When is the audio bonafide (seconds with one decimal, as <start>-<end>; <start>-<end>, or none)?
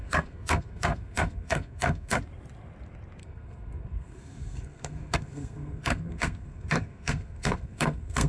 2.2-3.2